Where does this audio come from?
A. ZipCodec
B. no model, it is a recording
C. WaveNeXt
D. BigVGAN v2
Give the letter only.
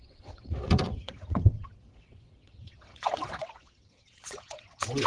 C